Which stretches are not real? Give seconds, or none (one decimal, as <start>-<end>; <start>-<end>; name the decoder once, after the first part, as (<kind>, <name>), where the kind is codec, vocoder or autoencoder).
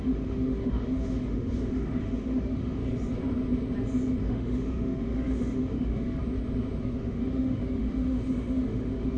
0.0-2.8 (autoencoder, DAC-VAE); 4.2-6.2; 6.8-9.2